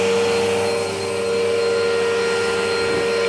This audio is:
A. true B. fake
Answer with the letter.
A